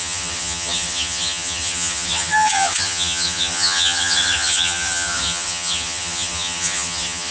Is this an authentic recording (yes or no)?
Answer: no